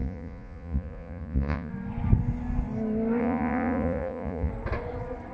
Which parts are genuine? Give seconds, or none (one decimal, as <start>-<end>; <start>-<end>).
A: 1.7-3.2; 4.5-5.3